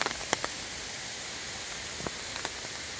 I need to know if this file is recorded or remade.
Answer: recorded